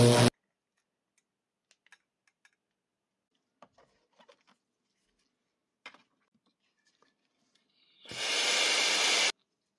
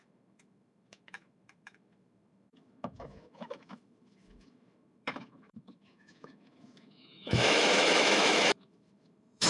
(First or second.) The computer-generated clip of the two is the second